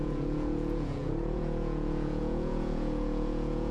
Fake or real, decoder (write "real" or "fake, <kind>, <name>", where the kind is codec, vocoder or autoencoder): fake, vocoder, Vocos